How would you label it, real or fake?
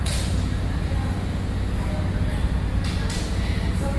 real